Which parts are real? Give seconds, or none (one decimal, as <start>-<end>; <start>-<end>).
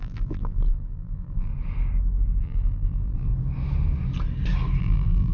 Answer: 1.5-2.4; 3.3-4.8